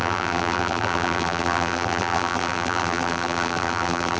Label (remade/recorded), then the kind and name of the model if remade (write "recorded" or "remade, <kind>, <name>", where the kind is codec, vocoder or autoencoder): remade, vocoder, BigVGAN v2